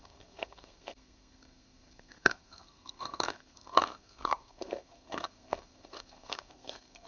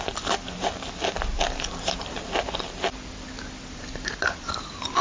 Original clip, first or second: second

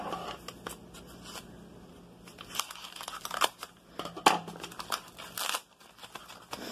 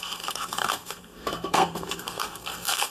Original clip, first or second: first